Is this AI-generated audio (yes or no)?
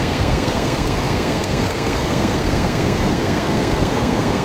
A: yes